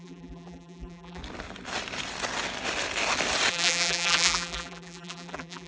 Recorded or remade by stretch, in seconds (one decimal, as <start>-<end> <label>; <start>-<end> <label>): 0.0-1.2 remade; 1.2-3.5 recorded; 3.5-5.7 remade